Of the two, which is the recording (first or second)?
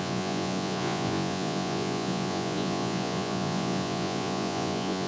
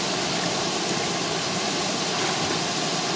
second